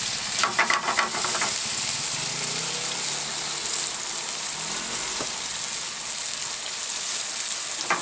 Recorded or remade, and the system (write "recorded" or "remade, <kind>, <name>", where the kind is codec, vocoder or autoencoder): recorded